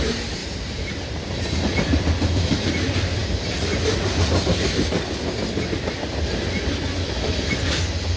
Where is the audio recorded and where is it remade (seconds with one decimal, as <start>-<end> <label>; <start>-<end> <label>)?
0.0-0.4 recorded; 0.4-1.6 remade; 1.6-8.2 recorded